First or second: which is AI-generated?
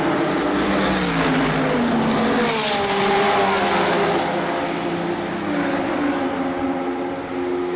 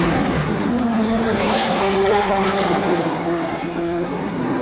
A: second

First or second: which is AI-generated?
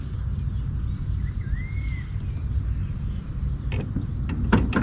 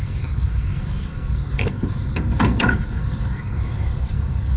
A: second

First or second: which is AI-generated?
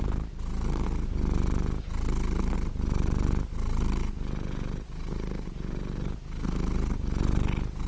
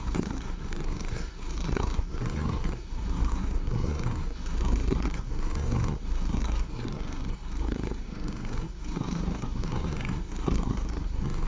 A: second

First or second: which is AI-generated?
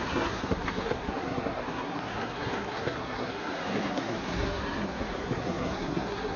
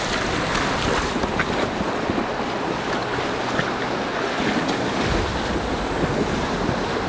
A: first